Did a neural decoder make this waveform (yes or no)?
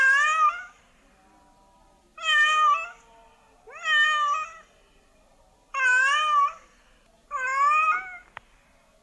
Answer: no